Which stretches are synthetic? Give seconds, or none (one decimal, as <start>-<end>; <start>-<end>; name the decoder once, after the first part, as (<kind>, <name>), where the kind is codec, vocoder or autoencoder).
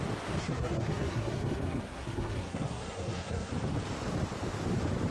0.4-3.5 (codec, SNAC)